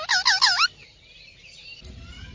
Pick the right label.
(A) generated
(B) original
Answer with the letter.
B